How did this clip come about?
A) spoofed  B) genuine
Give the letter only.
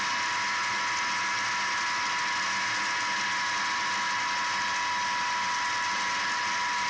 B